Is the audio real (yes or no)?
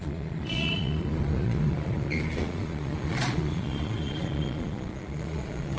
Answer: no